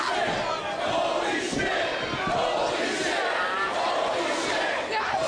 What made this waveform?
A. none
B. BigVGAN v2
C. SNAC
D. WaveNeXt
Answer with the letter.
A